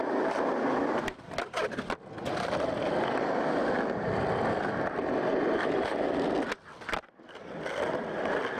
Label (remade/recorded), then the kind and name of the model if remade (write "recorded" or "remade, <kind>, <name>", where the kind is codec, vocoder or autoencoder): recorded